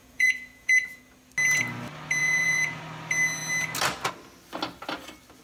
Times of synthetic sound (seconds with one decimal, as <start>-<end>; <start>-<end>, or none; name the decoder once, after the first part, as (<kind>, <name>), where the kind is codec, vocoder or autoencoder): 0.0-1.0 (vocoder, Vocos); 2.2-2.8